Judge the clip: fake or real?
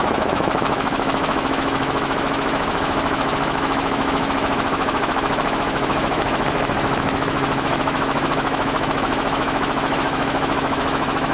fake